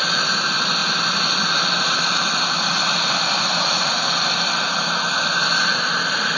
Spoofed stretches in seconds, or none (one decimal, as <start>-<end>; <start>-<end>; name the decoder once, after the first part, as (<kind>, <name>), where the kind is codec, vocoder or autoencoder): none

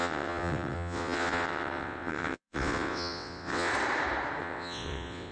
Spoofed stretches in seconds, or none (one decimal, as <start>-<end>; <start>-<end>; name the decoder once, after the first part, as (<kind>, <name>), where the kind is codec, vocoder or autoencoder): 0.0-3.7 (vocoder, WaveNeXt); 4.4-5.3

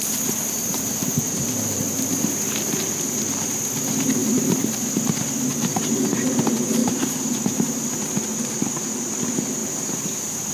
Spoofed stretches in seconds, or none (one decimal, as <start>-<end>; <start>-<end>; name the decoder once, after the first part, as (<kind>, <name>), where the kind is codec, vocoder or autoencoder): 0.7-2.1 (vocoder, BigVGAN v2); 4.2-4.9; 6.8-7.8; 9.6-10.5

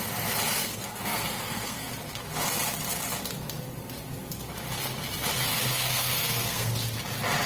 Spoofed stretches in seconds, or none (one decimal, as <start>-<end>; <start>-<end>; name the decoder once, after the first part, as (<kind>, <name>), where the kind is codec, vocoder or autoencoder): 0.6-1.9 (codec, SNAC); 5.5-6.7

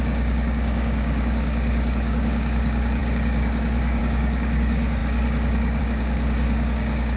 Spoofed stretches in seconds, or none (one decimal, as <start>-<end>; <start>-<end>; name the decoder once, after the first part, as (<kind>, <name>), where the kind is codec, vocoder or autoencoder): 0.0-7.2 (codec, DAC)